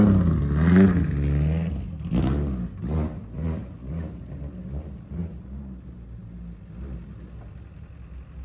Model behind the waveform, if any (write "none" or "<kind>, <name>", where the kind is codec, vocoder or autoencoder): none